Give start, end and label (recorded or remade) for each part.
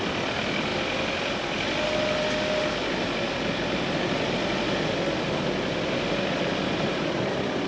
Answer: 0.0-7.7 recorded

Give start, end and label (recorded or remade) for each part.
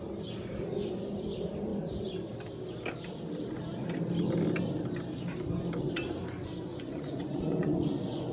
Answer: 0.0-6.7 recorded; 6.7-8.3 remade